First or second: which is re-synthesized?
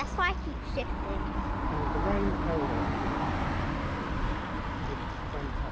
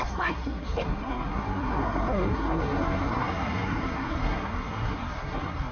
second